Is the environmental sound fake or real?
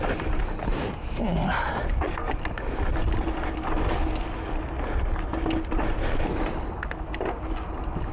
real